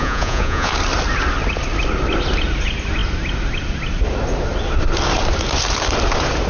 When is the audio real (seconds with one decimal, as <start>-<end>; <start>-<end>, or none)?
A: 0.7-6.5